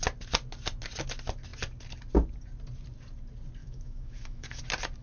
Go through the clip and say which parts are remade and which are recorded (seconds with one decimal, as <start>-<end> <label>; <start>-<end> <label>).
0.0-3.6 recorded; 3.6-4.6 remade; 4.6-5.0 recorded